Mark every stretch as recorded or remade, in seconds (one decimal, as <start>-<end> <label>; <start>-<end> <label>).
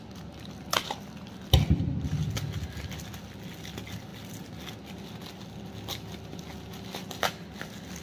0.0-8.0 recorded